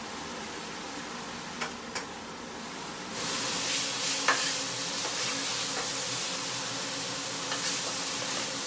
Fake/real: real